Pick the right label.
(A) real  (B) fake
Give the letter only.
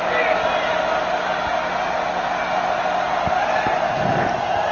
A